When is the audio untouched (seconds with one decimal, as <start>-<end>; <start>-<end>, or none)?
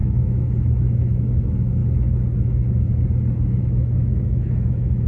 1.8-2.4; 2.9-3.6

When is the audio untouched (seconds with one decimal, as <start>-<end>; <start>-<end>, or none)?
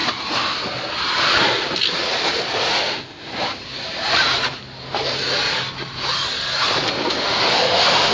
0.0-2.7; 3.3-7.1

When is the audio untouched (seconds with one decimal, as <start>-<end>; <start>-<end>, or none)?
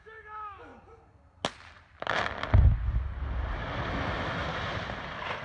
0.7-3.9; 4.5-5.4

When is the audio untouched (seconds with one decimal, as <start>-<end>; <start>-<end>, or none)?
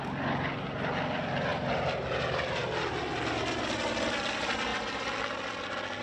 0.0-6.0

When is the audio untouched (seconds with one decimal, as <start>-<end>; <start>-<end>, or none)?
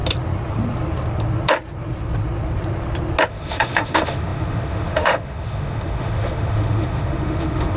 0.0-3.3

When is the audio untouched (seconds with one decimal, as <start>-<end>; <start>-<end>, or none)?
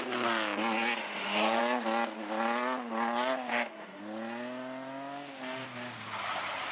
0.0-1.0; 1.6-3.5; 4.0-6.7